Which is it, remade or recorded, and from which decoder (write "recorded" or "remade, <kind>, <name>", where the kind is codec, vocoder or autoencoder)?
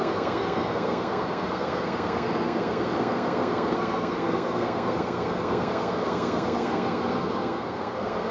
remade, codec, SNAC